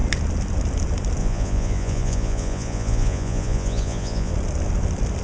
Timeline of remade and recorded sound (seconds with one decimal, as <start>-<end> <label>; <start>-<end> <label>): 0.0-1.2 recorded; 1.2-4.3 remade; 4.3-5.2 recorded